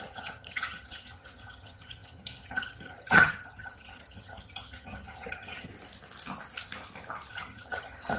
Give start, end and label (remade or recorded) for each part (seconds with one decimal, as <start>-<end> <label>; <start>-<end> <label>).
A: 0.0-5.7 remade; 5.7-7.3 recorded; 7.3-8.2 remade